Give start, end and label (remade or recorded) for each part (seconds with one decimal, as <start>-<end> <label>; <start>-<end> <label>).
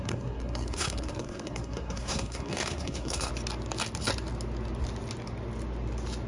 0.0-3.3 remade; 3.3-6.3 recorded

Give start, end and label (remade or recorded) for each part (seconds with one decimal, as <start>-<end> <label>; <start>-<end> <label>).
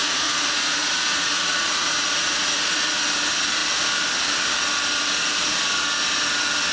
0.0-3.0 remade; 3.0-6.7 recorded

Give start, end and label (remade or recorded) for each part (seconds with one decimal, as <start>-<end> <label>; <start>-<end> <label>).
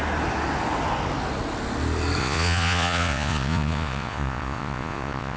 0.0-2.2 recorded; 2.2-5.4 remade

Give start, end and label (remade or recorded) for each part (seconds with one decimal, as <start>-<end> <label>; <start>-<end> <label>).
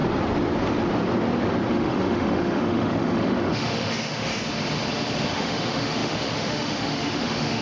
0.0-1.7 recorded; 1.7-4.3 remade; 4.3-5.3 recorded; 5.3-7.6 remade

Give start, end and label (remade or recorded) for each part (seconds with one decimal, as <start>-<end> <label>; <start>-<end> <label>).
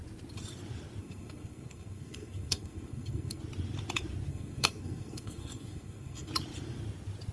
0.0-1.0 recorded; 1.0-3.4 remade; 3.4-4.3 recorded; 4.3-6.3 remade; 6.3-7.3 recorded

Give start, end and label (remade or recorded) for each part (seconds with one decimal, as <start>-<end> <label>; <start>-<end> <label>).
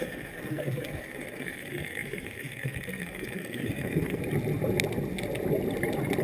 0.0-4.2 remade; 4.2-6.2 recorded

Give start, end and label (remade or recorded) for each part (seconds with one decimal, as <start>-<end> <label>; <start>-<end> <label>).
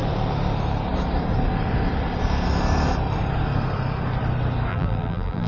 0.0-4.7 recorded; 4.7-5.5 remade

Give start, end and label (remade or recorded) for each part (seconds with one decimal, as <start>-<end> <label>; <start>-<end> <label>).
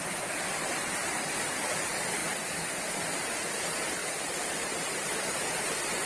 0.0-2.2 remade; 2.2-3.1 recorded; 3.1-4.0 remade; 4.0-4.6 recorded; 4.6-6.1 remade